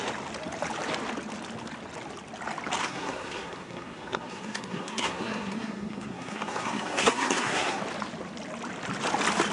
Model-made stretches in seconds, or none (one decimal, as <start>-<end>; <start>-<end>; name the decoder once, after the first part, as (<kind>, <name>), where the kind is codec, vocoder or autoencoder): 2.8-7.8 (codec, SNAC)